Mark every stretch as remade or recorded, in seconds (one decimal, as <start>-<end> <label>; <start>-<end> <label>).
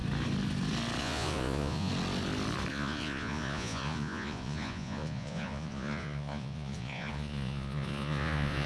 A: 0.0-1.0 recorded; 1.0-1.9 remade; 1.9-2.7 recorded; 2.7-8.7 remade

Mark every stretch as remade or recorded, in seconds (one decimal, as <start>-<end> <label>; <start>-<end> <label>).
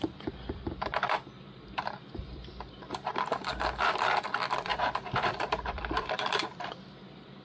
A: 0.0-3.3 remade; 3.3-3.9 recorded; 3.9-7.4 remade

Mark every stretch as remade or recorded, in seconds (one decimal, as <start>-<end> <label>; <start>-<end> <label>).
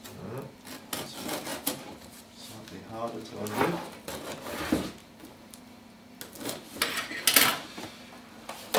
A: 0.0-1.5 recorded; 1.5-2.5 remade; 2.5-5.0 recorded; 5.0-5.6 remade; 5.6-7.5 recorded; 7.5-8.0 remade; 8.0-8.8 recorded